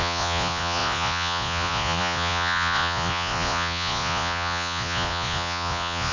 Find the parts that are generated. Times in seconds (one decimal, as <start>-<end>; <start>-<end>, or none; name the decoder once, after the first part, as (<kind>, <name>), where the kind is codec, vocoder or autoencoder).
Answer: 0.0-6.1 (vocoder, Vocos)